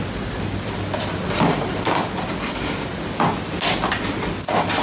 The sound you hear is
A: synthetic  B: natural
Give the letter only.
B